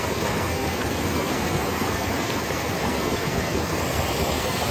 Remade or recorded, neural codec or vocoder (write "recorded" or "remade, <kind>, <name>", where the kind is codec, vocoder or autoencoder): remade, codec, SNAC